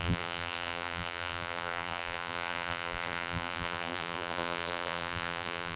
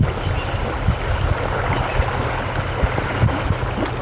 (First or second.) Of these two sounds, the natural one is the second